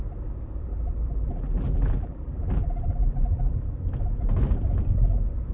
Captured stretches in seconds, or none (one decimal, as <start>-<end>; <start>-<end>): 0.0-0.7; 3.7-5.5